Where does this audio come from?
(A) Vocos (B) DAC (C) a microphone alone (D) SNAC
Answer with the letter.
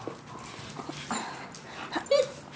C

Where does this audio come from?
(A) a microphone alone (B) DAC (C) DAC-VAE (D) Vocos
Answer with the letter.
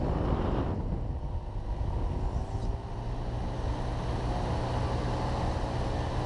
A